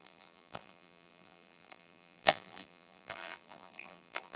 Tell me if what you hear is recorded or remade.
remade